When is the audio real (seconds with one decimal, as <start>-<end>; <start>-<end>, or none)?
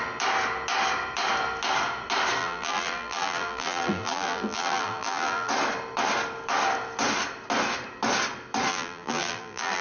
0.0-2.4; 5.5-8.7